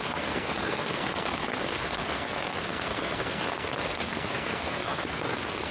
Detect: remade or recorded remade